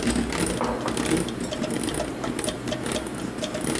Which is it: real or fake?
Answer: real